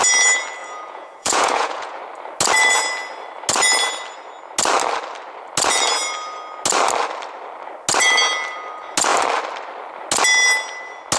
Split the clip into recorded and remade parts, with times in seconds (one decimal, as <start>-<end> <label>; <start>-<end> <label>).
0.0-0.6 recorded; 0.6-2.0 remade; 2.0-11.2 recorded